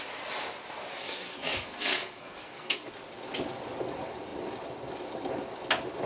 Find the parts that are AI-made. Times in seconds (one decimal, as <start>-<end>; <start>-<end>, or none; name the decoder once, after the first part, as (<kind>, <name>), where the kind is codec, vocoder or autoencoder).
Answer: 1.0-2.9 (codec, SNAC)